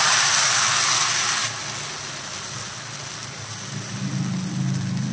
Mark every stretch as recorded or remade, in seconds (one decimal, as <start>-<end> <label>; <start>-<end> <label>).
0.0-5.1 recorded